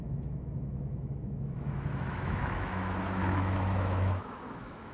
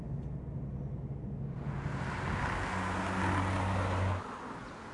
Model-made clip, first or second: first